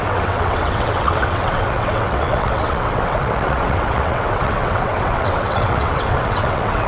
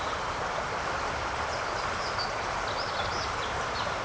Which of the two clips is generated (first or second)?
first